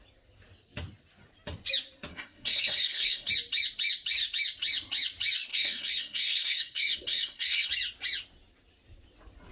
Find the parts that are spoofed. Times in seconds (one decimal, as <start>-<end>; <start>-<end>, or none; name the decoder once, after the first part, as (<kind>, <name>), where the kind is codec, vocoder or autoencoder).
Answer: 2.1-3.3 (codec, SNAC); 5.5-7.7